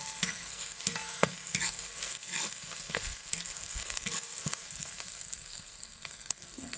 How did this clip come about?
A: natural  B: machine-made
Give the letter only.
B